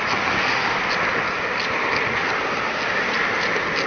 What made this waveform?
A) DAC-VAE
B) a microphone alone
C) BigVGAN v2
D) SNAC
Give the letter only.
B